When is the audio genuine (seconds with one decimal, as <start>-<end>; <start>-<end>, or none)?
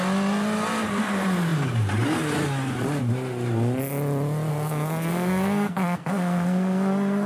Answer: 0.0-4.5